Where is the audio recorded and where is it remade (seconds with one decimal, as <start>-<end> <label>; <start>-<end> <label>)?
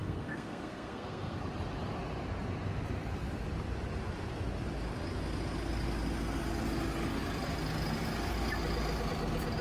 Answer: 0.0-1.4 remade; 1.4-9.6 recorded